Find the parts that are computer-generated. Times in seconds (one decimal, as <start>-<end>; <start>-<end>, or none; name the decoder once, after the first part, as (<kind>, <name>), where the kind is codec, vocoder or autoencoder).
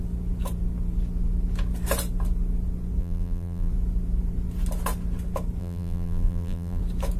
3.0-3.7 (vocoder, BigVGAN v2); 5.6-6.8